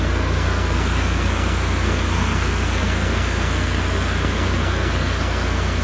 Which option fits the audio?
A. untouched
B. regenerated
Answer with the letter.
B